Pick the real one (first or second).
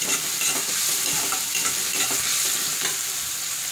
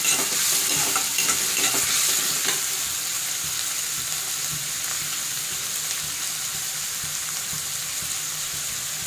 second